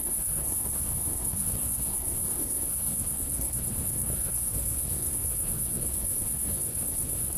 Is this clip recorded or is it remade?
remade